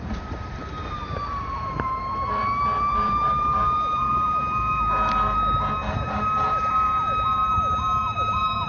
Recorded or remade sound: remade